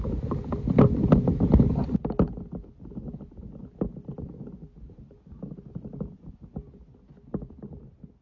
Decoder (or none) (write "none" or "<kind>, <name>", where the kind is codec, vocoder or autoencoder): none